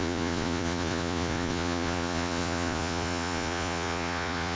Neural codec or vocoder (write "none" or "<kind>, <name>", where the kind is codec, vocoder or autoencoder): vocoder, Vocos